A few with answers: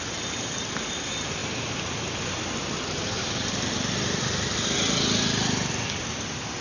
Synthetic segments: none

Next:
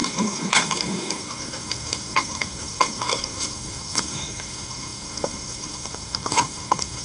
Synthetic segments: 0.0-7.0 (codec, SNAC)

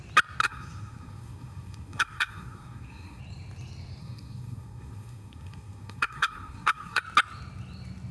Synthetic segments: 0.4-3.2 (codec, SNAC); 4.0-7.0

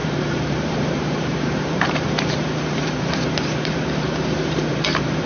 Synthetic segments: 0.0-5.3 (vocoder, BigVGAN v2)

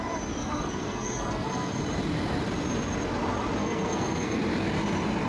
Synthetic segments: 0.4-1.8 (codec, SNAC); 3.6-4.4

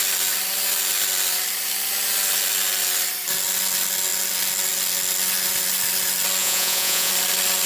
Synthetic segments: 6.4-7.1 (vocoder, Vocos)

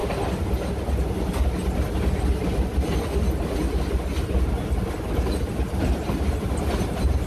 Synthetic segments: none